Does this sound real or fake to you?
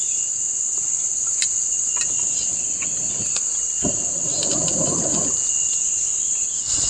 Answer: real